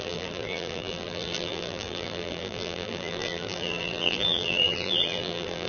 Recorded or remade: remade